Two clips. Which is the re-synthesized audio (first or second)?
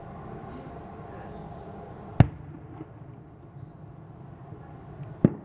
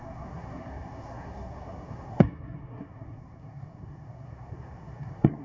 second